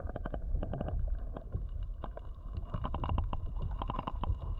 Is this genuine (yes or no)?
no